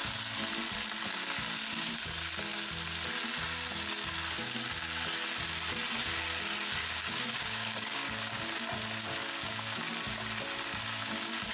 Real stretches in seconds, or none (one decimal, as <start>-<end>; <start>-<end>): 0.0-6.8; 8.4-9.3; 9.8-11.0